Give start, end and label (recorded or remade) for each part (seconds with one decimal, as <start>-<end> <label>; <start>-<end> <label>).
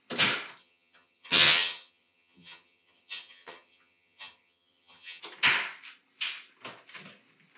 0.0-0.6 recorded; 0.6-5.2 remade; 5.2-7.6 recorded